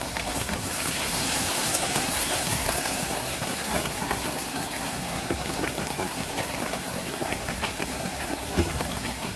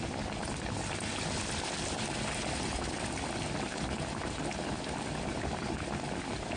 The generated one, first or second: first